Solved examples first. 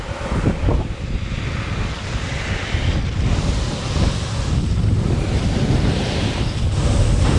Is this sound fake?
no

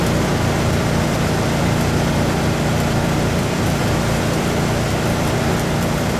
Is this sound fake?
yes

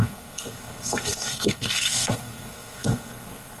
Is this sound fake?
yes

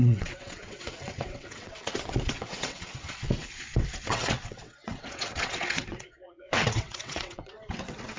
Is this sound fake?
yes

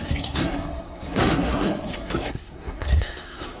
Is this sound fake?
yes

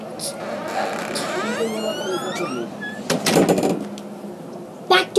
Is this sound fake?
no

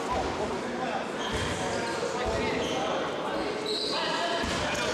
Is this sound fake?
no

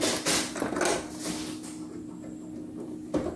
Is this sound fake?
no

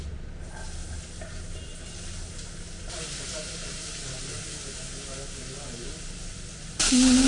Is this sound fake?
no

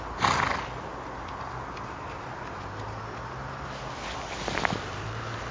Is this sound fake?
no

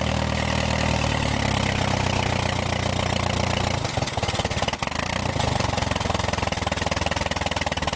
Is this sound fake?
no